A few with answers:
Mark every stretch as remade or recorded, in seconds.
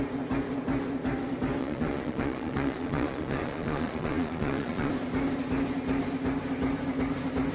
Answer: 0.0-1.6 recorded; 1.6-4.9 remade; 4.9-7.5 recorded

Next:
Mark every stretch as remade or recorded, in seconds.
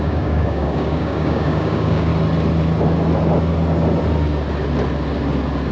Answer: 0.0-2.1 remade; 2.1-5.7 recorded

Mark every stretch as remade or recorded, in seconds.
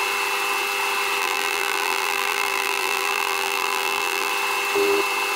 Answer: 0.0-1.2 recorded; 1.2-4.3 remade; 4.3-5.4 recorded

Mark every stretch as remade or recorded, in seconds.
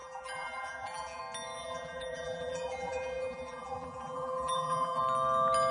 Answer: 0.0-1.2 remade; 1.2-1.6 recorded; 1.6-5.0 remade; 5.0-5.7 recorded